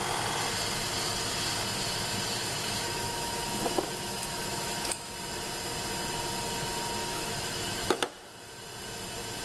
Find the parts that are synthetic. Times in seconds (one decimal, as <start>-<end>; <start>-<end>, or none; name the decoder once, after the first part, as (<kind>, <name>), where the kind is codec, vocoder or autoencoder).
2.4-5.1 (autoencoder, DAC-VAE); 7.0-8.2